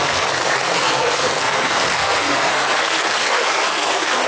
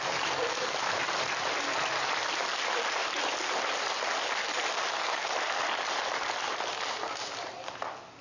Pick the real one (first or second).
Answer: second